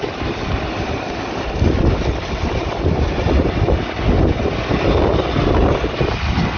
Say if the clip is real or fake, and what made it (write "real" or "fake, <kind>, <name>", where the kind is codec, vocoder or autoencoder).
real